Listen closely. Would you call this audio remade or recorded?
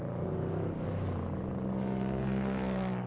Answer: recorded